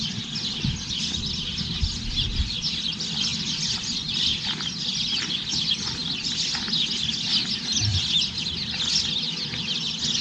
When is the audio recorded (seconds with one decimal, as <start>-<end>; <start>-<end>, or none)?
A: 0.0-10.2